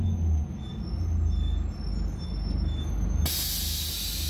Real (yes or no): yes